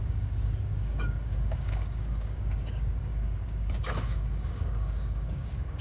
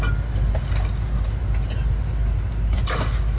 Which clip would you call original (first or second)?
second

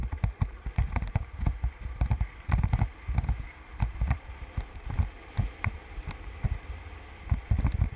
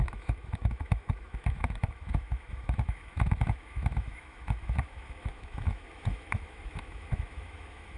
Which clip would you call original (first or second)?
first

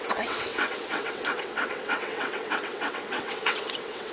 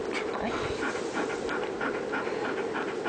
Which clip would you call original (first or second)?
second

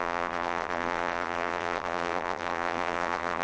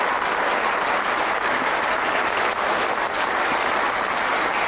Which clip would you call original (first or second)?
second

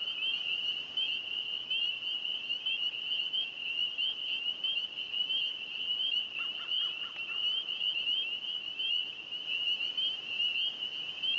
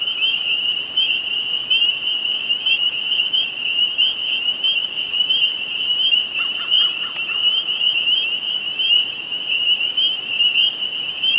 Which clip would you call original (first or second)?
first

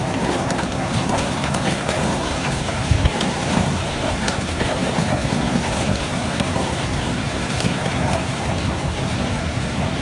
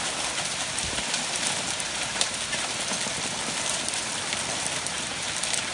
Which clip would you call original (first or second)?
second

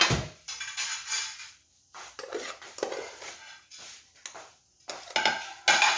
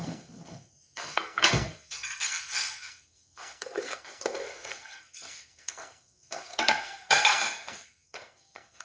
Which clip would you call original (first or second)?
first